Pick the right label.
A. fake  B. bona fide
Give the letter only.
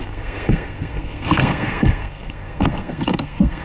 A